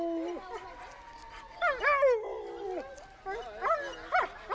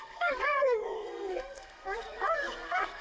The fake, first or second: second